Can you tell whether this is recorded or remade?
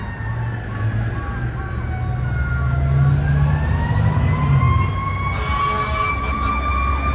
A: recorded